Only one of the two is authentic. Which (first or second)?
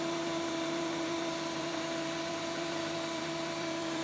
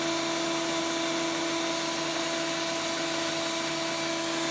second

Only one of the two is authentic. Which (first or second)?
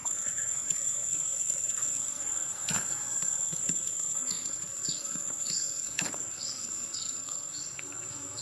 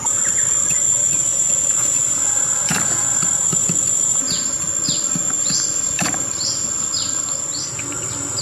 second